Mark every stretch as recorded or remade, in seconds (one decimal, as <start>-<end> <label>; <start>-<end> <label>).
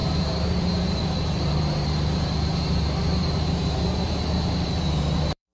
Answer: 0.0-5.5 remade